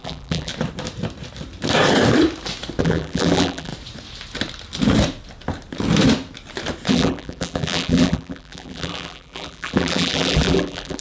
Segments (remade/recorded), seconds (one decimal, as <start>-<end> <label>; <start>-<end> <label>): 0.0-0.5 remade; 0.5-2.8 recorded; 2.8-3.7 remade; 3.7-6.9 recorded; 6.9-11.0 remade